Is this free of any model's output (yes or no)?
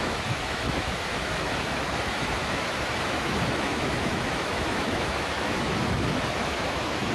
no